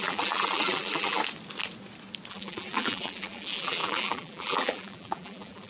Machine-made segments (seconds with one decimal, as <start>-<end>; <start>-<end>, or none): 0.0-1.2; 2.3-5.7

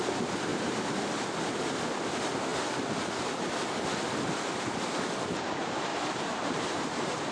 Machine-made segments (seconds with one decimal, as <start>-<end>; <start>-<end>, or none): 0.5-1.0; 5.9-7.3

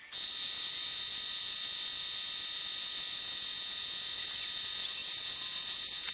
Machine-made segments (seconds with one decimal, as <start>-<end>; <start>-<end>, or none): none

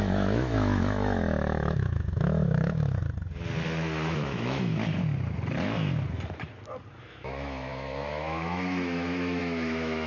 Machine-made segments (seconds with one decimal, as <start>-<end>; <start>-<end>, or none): 0.0-3.0; 4.1-4.7; 7.0-10.1